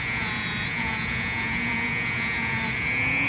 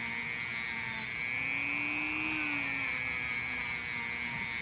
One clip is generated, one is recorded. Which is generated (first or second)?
first